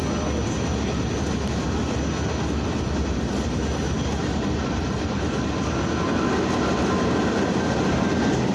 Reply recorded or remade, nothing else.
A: recorded